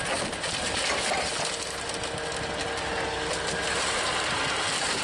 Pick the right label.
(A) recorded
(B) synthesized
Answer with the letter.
A